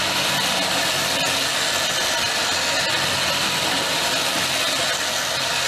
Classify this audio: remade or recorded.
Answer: recorded